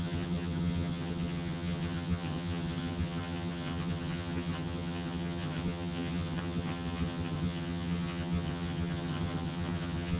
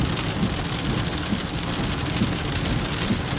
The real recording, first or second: second